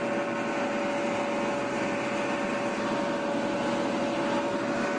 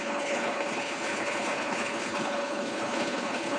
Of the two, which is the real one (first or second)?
first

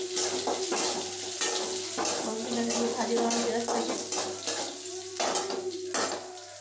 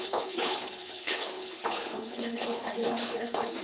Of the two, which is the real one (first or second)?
first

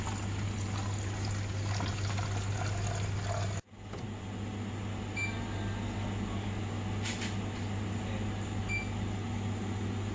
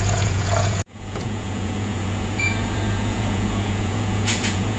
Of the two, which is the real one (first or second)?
first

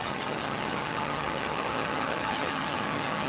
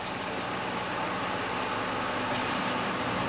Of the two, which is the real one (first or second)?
second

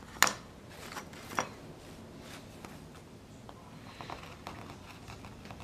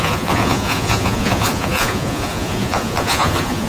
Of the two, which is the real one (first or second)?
first